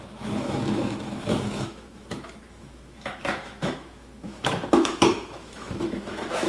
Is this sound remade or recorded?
remade